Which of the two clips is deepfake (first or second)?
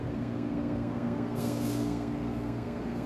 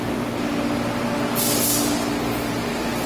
first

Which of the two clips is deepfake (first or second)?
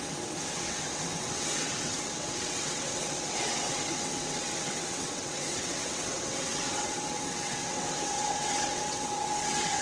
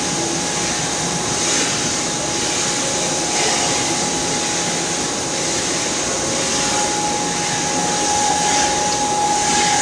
first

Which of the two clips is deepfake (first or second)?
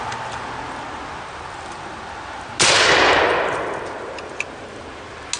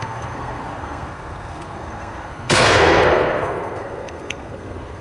second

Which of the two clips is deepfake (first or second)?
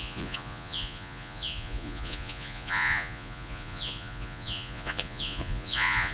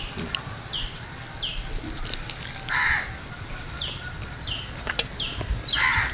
first